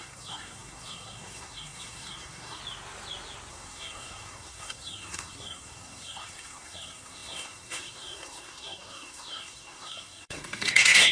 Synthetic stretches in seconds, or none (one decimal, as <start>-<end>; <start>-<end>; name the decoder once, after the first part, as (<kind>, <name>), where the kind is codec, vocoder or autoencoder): 0.0-2.6 (codec, SNAC); 3.5-11.1